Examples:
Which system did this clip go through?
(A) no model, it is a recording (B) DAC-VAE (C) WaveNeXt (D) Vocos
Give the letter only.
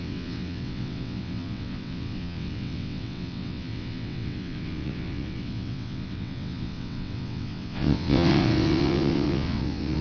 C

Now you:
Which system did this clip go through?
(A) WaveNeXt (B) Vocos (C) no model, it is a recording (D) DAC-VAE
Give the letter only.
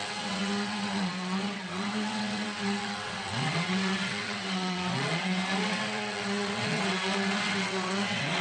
A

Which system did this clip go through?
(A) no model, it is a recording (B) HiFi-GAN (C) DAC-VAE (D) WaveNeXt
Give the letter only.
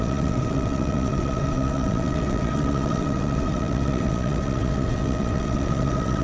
D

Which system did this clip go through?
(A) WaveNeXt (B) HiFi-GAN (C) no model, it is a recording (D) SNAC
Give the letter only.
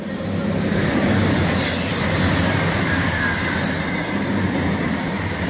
C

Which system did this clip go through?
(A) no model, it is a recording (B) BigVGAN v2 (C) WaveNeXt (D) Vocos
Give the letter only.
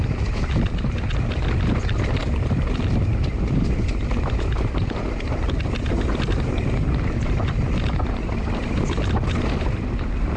A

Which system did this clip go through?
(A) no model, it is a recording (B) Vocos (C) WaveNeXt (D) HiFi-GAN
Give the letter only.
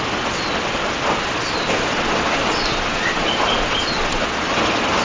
A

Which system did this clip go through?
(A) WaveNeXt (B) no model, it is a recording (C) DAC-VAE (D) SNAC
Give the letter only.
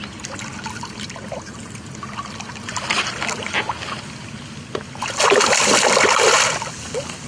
B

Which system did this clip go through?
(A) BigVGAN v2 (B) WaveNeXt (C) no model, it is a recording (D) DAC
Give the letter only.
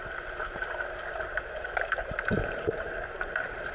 C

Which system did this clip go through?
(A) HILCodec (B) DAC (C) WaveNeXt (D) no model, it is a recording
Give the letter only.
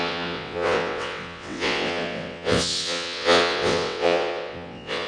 C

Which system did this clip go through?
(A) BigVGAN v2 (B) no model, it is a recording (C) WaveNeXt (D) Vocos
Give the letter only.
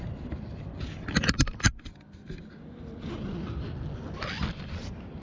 B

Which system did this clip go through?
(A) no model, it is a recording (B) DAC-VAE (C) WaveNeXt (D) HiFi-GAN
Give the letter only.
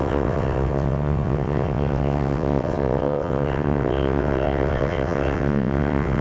C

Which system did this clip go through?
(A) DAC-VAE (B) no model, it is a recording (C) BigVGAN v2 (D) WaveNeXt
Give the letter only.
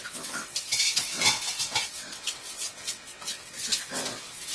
D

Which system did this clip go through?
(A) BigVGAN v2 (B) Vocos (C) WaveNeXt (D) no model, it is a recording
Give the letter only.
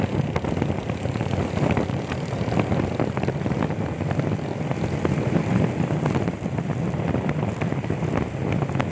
D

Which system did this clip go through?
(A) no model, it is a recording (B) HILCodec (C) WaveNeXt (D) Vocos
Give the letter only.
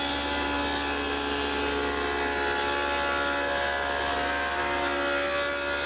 A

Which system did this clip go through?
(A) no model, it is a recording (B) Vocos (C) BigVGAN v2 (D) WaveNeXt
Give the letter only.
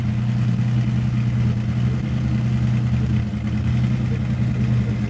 A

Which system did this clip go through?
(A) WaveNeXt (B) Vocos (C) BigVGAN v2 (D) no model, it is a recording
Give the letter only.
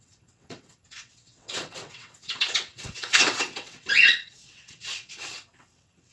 A